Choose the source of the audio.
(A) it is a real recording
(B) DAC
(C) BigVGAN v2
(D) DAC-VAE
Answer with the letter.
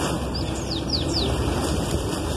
A